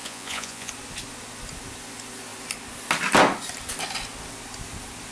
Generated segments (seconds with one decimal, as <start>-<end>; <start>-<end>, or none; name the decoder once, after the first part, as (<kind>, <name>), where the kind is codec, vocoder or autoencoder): 0.0-0.7 (vocoder, Vocos)